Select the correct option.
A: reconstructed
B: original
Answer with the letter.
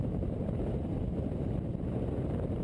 A